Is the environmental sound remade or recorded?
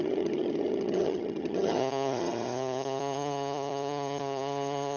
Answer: remade